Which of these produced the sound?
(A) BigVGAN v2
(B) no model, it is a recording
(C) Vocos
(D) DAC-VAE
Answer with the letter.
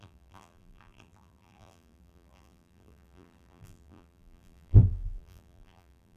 A